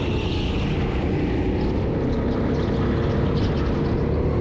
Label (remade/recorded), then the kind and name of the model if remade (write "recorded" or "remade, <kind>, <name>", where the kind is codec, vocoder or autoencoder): recorded